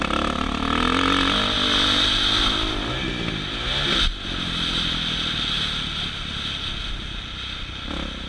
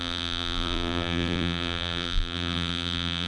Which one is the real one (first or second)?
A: first